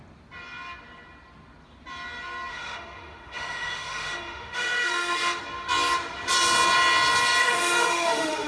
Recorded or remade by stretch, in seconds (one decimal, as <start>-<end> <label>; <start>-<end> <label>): 0.0-2.5 recorded; 2.5-5.4 remade; 5.4-7.4 recorded; 7.4-8.5 remade